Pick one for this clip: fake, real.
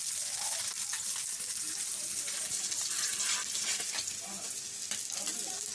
real